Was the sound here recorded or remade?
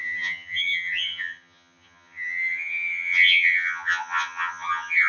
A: remade